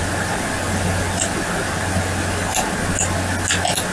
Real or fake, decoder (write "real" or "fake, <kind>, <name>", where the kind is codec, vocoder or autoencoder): real